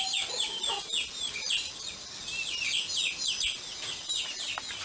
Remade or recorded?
recorded